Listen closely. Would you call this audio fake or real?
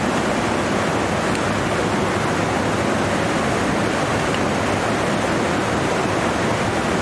real